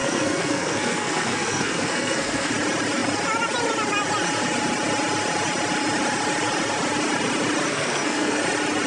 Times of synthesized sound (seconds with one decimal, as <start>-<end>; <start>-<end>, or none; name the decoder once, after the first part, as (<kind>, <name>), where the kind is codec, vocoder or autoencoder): 0.0-2.5 (codec, SNAC); 7.7-8.4